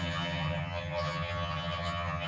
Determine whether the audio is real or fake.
fake